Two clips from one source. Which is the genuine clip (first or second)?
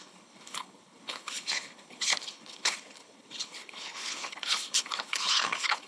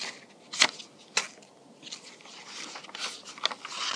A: second